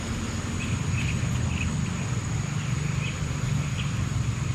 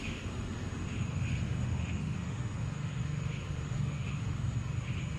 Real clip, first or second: first